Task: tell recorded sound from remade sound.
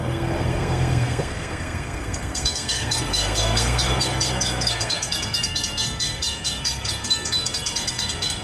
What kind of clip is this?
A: remade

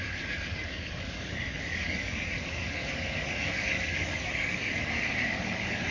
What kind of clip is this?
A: remade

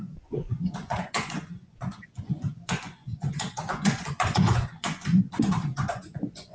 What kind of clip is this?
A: remade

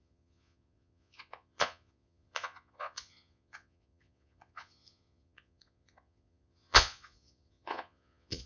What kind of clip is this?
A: remade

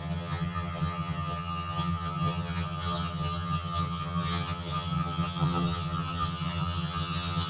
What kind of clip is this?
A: remade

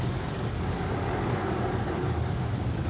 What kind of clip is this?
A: remade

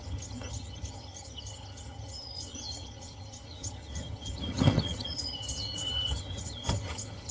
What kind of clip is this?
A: remade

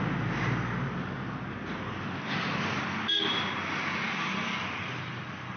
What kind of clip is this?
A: recorded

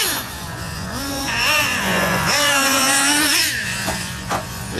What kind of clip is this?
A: remade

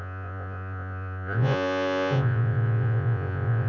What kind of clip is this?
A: remade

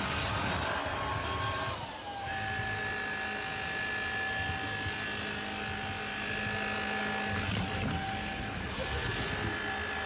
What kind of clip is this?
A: recorded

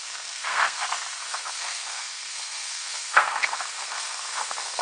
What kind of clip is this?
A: remade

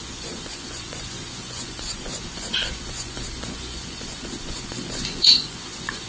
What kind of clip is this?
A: remade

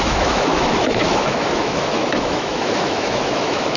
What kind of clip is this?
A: remade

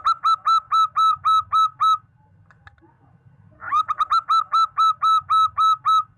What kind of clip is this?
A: recorded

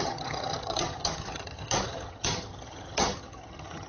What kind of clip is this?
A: remade